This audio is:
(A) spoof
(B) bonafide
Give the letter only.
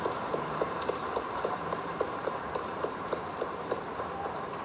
A